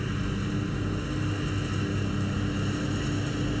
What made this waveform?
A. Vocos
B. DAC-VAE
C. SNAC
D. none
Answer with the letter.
D